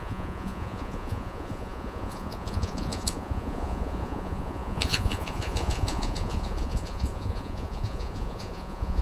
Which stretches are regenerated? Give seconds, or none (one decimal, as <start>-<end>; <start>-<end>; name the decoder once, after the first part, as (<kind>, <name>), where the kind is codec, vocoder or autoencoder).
0.0-9.0 (vocoder, Vocos)